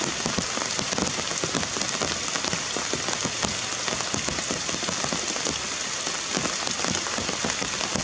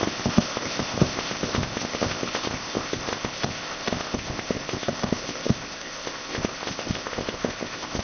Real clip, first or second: first